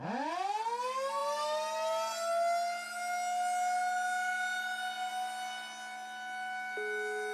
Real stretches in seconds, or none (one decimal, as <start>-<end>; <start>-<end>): 0.0-7.3